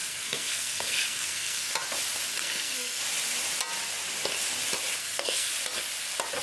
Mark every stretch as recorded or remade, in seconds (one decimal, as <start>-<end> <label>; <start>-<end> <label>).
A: 0.0-1.7 remade; 1.7-2.3 recorded; 2.3-3.0 remade; 3.0-5.0 recorded; 5.0-5.5 remade; 5.5-6.4 recorded